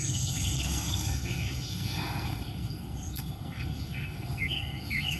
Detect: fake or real fake